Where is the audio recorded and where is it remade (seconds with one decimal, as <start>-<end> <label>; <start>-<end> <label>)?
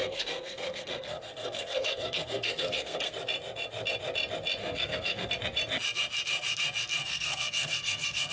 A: 0.0-3.1 remade; 3.1-4.6 recorded; 4.6-5.3 remade; 5.3-7.0 recorded; 7.0-8.3 remade